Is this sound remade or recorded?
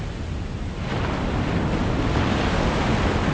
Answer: recorded